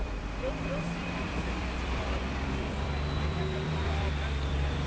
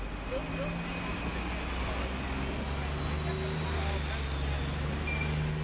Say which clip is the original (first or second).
second